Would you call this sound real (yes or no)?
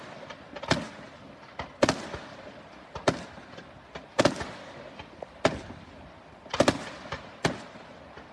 yes